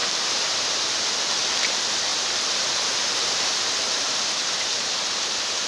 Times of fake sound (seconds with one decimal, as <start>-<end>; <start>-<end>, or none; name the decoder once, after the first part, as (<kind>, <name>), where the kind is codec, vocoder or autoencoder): 0.0-1.0 (vocoder, BigVGAN v2); 2.1-5.7